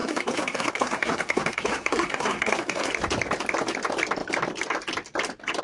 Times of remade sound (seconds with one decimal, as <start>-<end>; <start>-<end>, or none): 0.0-2.9